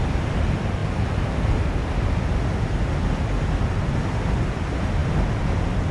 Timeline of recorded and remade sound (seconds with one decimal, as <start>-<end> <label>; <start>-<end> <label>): 0.0-5.9 recorded